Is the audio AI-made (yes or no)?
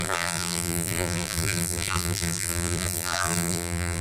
yes